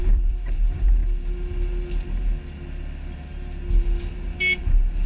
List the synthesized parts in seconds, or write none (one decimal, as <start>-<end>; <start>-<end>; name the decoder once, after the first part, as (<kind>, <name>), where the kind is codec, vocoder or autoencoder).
0.0-1.0 (vocoder, BigVGAN v2); 4.1-5.1